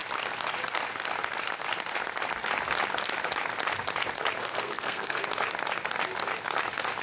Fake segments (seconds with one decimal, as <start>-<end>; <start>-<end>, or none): 4.4-5.2